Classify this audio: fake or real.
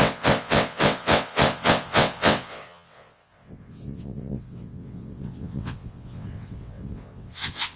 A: fake